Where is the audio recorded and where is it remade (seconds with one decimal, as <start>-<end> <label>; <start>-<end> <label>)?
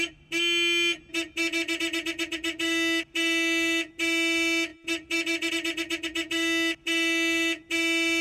0.0-8.2 recorded